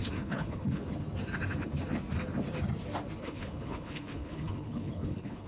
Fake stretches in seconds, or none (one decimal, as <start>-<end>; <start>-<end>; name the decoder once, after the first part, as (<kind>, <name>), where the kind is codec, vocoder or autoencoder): 0.0-0.8 (codec, HILCodec); 3.2-5.5